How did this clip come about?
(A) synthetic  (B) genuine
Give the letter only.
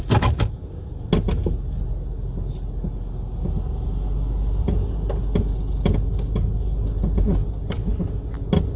B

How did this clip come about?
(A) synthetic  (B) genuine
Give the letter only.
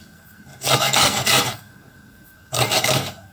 A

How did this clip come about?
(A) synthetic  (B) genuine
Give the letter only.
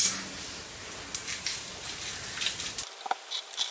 B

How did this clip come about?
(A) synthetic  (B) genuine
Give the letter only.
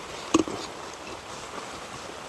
B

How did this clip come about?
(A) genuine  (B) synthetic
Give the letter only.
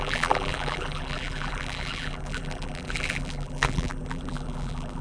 B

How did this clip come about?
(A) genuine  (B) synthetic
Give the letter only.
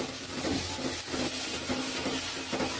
A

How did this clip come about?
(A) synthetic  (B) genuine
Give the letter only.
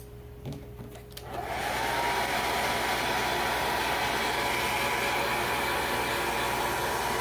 B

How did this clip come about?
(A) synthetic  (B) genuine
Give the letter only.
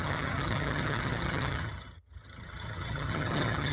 A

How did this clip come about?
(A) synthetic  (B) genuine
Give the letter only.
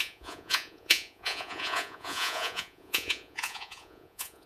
A